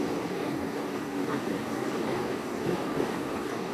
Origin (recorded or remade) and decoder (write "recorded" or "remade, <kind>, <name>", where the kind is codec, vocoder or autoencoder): remade, codec, DAC